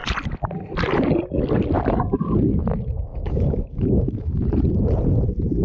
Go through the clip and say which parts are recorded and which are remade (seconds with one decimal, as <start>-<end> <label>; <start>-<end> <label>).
0.0-3.1 recorded; 3.1-4.4 remade; 4.4-5.6 recorded